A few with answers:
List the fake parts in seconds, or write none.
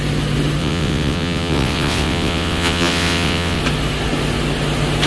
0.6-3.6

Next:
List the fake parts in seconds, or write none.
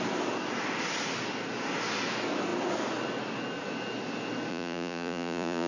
4.5-5.7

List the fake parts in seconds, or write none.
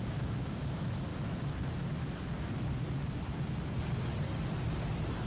0.0-0.6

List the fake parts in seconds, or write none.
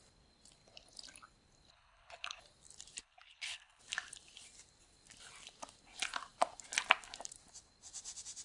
1.7-2.4; 3.0-3.8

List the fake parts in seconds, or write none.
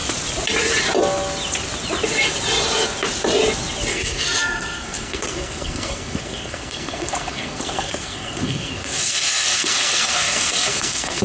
3.9-11.2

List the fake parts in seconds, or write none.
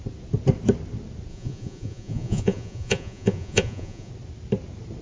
1.3-4.1